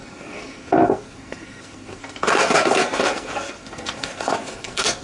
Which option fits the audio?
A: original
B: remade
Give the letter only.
B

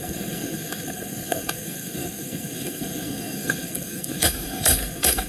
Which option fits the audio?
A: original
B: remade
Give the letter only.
B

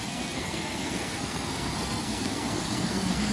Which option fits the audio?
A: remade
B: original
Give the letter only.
A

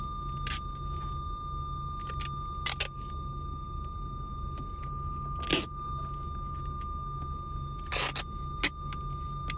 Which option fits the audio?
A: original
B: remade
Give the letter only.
A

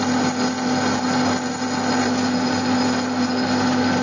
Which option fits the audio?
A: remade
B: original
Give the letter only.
B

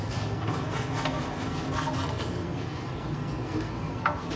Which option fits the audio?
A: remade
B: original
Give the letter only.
A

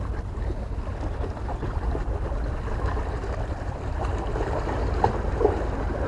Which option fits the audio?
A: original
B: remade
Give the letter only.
A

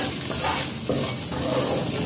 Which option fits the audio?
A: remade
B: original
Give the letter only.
B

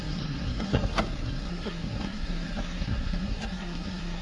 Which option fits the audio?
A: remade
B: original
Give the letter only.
A